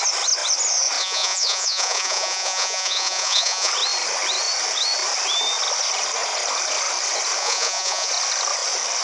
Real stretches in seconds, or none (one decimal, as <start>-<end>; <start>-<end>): 0.0-1.0; 3.7-7.4; 8.1-9.0